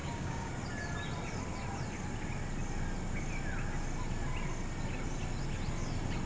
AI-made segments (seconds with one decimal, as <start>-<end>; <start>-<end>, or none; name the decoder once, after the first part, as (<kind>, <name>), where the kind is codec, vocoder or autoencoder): 0.0-0.5 (codec, DAC)